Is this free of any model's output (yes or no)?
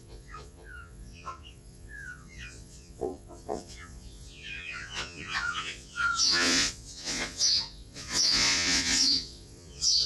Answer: no